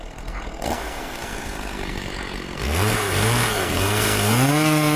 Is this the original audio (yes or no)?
no